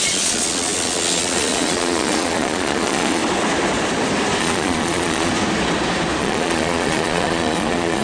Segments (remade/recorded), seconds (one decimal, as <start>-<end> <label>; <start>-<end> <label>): 0.0-3.2 remade; 3.2-4.4 recorded; 4.4-5.3 remade; 5.3-6.2 recorded; 6.2-8.0 remade